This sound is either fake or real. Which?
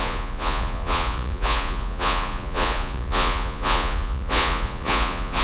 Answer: fake